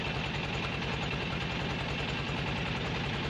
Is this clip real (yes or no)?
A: yes